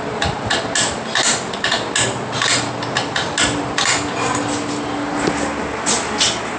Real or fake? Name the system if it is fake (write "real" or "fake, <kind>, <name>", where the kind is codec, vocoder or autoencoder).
real